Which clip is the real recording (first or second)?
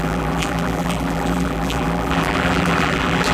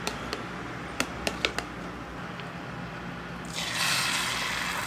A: second